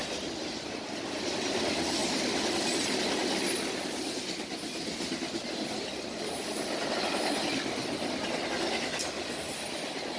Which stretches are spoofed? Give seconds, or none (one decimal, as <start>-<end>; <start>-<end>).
none